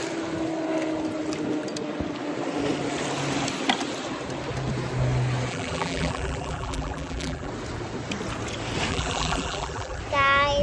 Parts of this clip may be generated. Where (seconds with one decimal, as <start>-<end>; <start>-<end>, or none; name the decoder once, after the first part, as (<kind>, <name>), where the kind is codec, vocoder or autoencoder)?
5.5-7.5 (vocoder, BigVGAN v2); 8.9-10.0